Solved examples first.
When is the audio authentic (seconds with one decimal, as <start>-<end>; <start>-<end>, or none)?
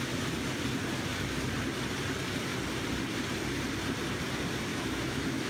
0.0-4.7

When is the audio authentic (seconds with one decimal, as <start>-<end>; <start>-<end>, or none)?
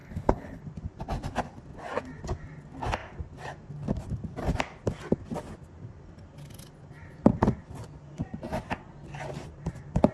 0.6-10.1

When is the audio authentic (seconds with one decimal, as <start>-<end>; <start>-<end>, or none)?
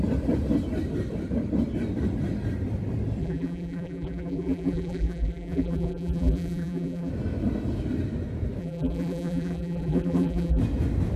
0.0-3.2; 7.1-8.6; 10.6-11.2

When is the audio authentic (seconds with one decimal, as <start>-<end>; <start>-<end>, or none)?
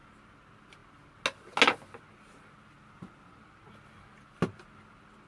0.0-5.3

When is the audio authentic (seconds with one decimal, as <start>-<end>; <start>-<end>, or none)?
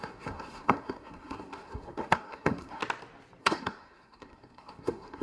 2.8-3.4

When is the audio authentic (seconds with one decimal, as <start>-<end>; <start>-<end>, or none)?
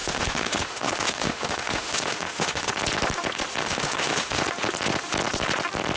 2.7-3.6; 4.4-6.0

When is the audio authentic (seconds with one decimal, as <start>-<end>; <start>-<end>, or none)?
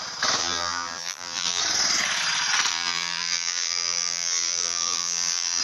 0.0-0.4; 1.6-2.7